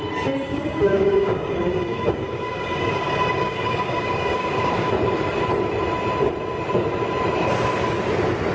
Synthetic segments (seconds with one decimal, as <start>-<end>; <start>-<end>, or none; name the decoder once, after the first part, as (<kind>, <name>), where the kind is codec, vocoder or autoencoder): 0.5-4.9 (codec, DAC)